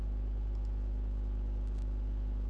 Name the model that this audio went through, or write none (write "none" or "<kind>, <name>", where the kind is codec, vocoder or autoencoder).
none